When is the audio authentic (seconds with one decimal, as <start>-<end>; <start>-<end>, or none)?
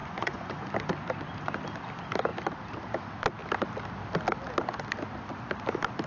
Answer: 0.7-6.1